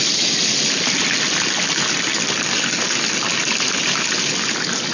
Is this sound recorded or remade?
recorded